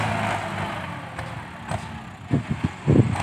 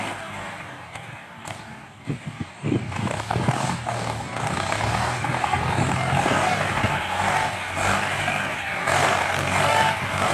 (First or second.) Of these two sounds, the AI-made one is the second